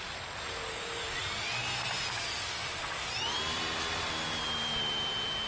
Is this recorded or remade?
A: recorded